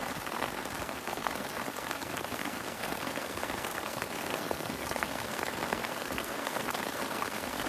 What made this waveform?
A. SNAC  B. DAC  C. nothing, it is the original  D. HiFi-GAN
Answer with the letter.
A